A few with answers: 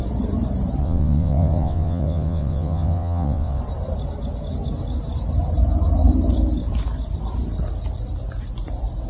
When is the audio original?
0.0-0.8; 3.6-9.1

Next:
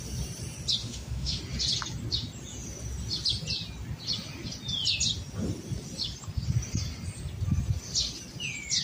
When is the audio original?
0.0-0.8; 1.4-8.8